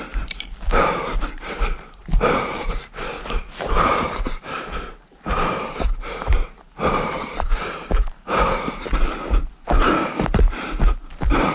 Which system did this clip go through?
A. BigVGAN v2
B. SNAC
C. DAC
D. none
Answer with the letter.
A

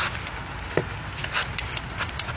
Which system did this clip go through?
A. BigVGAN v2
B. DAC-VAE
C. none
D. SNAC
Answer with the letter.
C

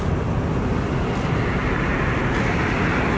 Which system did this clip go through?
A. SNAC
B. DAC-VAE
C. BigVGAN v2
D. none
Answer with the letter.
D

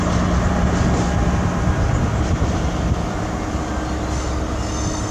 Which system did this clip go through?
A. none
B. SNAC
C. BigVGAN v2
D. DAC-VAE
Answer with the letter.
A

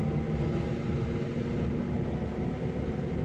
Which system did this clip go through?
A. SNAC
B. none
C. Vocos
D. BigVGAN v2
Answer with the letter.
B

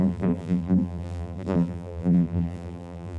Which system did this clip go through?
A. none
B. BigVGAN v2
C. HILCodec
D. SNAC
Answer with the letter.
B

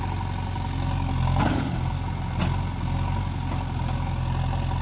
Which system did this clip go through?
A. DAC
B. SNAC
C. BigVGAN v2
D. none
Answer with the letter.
D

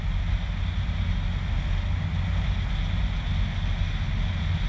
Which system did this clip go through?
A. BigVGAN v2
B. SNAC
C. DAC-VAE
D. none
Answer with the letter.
D